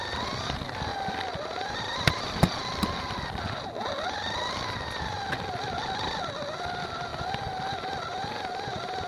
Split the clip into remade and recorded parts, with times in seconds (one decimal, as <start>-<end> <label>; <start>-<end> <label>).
0.0-9.1 recorded